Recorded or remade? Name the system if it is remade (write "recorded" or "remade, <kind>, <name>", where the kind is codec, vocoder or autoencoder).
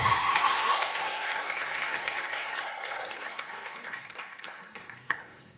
remade, codec, SNAC